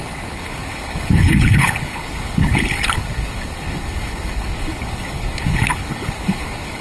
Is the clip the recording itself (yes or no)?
no